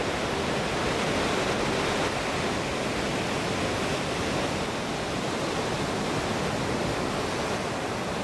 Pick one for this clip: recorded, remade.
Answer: recorded